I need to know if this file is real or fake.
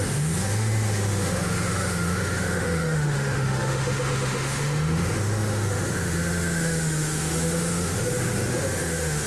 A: fake